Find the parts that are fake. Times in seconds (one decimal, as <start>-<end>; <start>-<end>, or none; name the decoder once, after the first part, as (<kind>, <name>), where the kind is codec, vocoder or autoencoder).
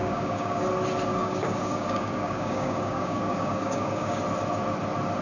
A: 0.0-0.6 (codec, DAC); 1.1-4.2